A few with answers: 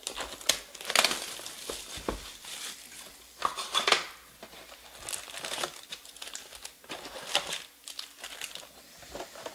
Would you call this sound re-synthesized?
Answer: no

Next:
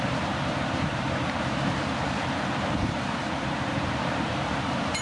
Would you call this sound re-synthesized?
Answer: yes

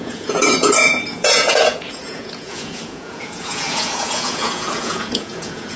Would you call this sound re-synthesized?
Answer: yes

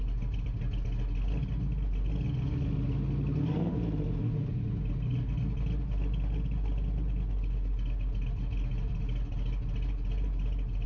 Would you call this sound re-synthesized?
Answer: no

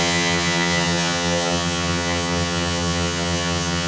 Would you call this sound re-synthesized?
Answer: yes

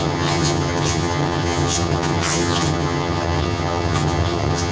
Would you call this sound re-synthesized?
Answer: yes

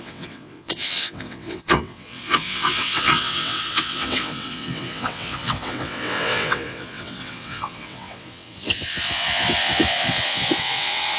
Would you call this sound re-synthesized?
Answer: yes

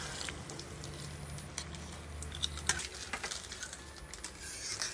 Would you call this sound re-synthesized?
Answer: no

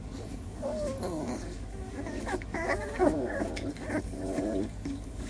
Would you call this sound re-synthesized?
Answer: yes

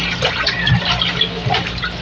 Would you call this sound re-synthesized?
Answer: no